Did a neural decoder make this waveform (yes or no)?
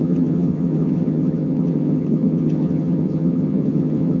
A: yes